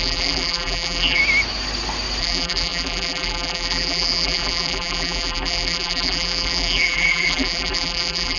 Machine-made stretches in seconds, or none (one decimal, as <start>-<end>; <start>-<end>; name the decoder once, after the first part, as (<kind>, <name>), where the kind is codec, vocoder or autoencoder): 0.0-1.2 (vocoder, BigVGAN v2); 2.2-8.4